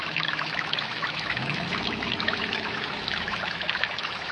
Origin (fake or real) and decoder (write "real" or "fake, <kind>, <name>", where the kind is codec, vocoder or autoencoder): fake, autoencoder, DAC-VAE